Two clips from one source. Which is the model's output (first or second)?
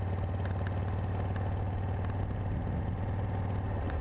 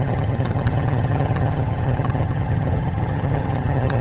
second